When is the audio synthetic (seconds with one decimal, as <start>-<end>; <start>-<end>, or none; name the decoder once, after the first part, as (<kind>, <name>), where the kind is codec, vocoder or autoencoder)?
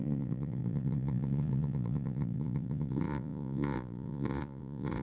0.0-5.0 (vocoder, Vocos)